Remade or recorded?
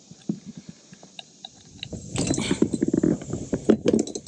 recorded